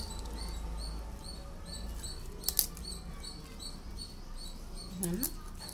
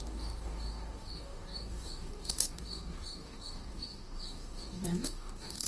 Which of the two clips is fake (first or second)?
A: second